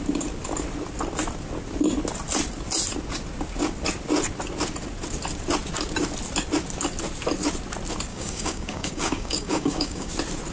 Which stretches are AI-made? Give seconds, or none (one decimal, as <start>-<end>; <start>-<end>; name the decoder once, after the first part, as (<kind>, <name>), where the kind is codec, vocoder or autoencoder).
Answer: 8.1-10.1 (codec, DAC)